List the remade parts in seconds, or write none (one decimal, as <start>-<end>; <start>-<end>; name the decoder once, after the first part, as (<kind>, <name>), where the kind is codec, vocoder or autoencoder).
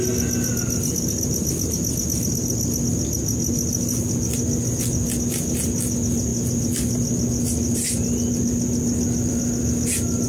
none